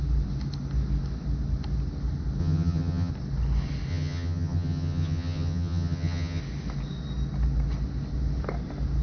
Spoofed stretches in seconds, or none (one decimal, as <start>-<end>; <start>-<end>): 2.4-3.1; 3.9-6.4